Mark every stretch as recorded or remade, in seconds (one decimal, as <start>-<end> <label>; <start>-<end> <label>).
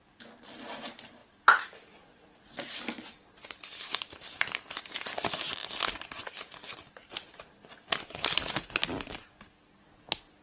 0.0-10.4 recorded